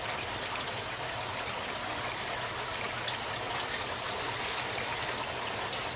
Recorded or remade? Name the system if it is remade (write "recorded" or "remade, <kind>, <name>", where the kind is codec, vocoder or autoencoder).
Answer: recorded